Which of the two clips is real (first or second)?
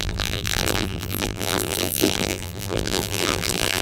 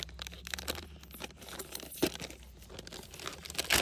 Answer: second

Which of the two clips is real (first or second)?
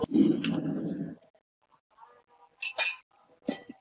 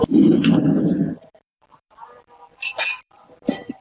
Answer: first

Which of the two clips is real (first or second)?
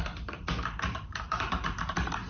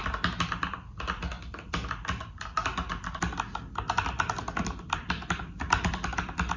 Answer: second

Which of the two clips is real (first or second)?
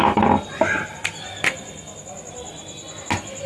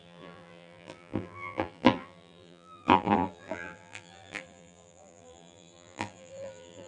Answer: first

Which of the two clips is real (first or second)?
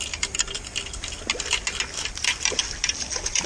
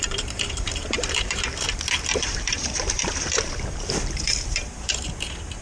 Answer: first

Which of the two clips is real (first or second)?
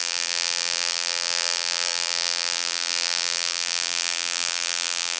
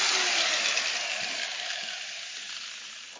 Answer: second